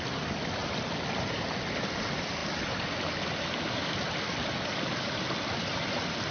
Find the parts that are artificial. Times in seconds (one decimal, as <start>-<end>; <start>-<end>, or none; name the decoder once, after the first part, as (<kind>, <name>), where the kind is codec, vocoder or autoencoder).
none